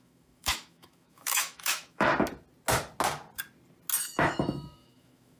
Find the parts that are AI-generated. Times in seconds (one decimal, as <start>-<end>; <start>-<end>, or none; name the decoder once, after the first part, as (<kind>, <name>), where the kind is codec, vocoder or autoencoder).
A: 0.0-2.1 (autoencoder, DAC-VAE); 4.0-5.4